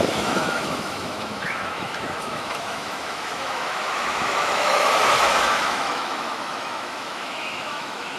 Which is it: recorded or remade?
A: remade